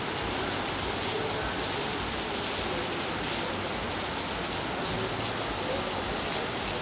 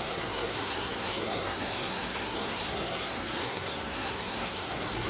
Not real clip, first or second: second